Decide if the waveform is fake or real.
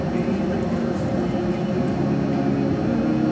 real